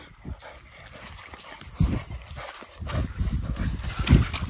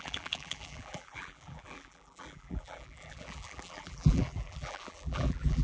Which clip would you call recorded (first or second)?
first